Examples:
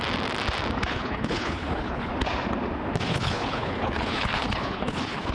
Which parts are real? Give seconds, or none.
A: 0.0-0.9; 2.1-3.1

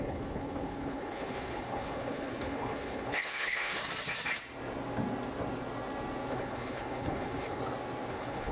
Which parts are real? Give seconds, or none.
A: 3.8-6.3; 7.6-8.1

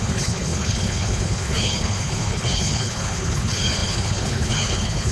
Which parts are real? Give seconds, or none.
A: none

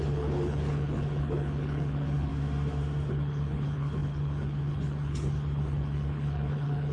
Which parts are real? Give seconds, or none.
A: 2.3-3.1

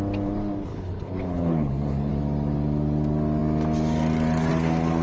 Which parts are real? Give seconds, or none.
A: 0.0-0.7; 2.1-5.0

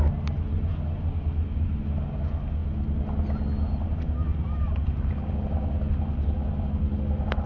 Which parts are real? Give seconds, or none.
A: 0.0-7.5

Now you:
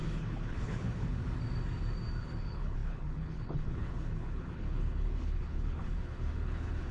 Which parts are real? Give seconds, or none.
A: 1.2-2.2

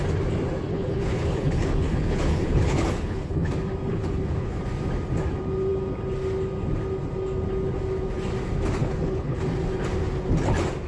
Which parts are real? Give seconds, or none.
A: 0.0-0.7; 3.5-3.9; 4.6-8.8; 9.4-10.9